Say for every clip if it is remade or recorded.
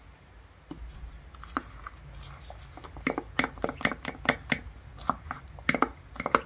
recorded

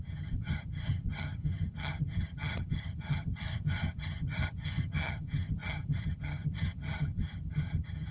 remade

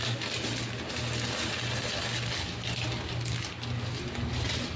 recorded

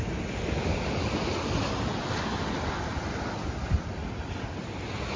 recorded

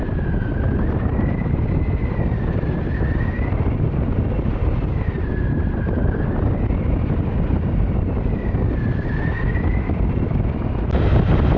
recorded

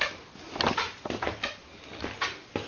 recorded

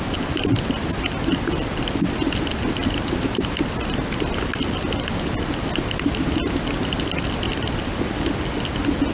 recorded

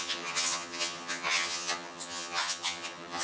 remade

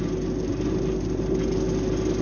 recorded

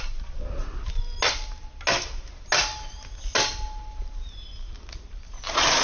recorded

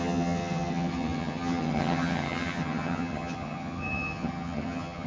remade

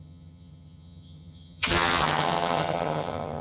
remade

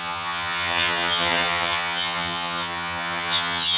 remade